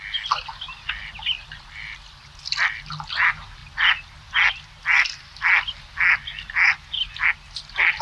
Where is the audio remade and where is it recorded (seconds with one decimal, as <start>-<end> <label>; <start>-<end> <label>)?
0.0-8.0 recorded